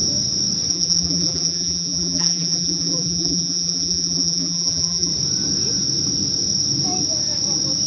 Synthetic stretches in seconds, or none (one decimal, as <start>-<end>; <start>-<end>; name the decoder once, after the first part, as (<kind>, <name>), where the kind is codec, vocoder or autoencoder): 0.7-5.1 (vocoder, BigVGAN v2)